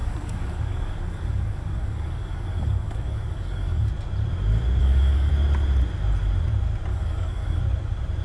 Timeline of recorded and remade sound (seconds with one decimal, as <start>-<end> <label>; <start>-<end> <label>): 0.0-3.9 remade; 3.9-4.8 recorded; 4.8-5.3 remade; 5.3-6.9 recorded; 6.9-7.6 remade; 7.6-8.2 recorded